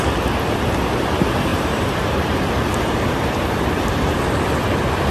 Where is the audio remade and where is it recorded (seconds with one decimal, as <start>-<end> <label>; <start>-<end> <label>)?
0.0-1.5 recorded; 1.5-4.6 remade; 4.6-5.1 recorded